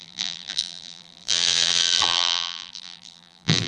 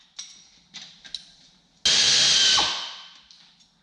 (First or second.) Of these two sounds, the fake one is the first